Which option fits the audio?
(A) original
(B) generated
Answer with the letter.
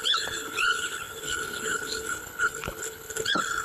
B